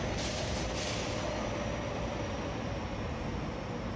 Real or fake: real